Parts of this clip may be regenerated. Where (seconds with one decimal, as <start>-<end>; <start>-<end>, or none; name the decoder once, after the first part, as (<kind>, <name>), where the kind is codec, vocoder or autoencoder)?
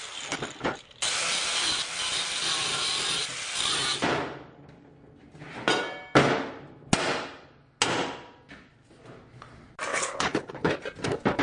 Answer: 9.9-10.7 (codec, HILCodec)